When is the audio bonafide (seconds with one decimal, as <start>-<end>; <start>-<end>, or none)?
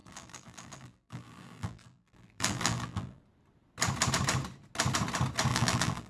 3.2-5.5